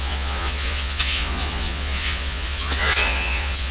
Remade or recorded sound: remade